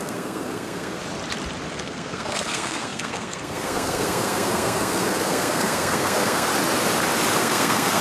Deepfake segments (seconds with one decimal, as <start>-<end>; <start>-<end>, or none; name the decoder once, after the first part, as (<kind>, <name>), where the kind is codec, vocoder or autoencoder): 0.0-1.0 (codec, SNAC); 1.7-6.5; 7.4-8.0